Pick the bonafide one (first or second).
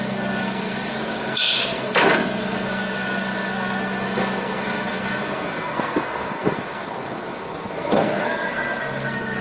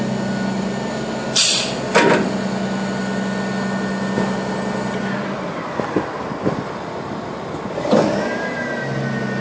second